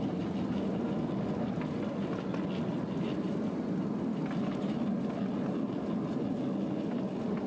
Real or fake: real